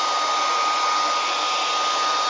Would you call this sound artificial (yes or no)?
no